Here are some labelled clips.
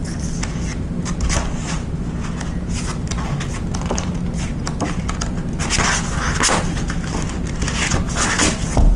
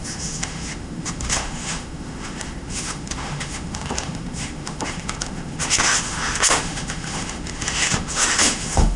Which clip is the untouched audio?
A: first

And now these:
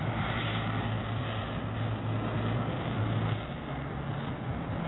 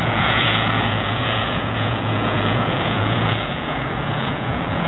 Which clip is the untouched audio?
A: first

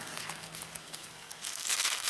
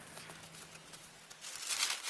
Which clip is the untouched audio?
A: second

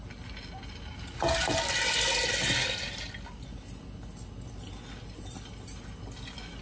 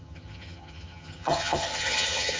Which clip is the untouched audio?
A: first